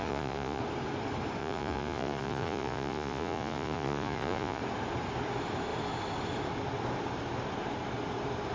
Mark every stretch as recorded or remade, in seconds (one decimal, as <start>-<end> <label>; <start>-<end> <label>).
0.0-0.6 remade; 0.6-1.4 recorded; 1.4-4.6 remade; 4.6-8.5 recorded